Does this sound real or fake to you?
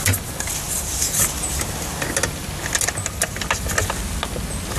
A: real